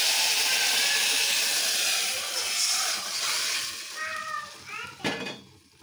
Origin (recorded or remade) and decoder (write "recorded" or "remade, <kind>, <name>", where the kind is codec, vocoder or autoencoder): recorded